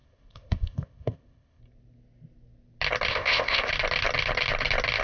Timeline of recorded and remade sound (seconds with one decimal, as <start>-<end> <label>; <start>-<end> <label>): 0.0-1.6 remade; 1.6-3.1 recorded; 3.1-3.7 remade; 3.7-5.0 recorded